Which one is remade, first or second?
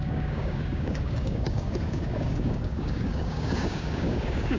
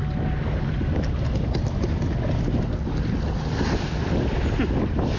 first